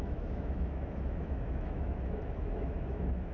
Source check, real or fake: fake